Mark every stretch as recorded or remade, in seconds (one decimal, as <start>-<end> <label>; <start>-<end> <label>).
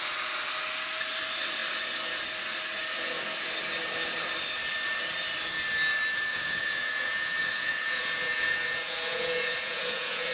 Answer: 0.0-6.3 recorded; 6.3-10.3 remade